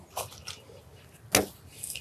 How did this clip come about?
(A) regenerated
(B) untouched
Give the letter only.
B